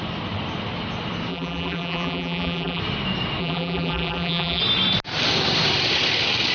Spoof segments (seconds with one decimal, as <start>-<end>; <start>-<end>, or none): 1.3-2.8; 3.4-4.6